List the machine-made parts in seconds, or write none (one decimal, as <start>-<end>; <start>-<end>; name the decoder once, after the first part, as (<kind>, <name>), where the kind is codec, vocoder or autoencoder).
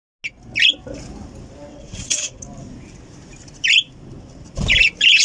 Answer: 1.7-2.4 (vocoder, WaveNeXt)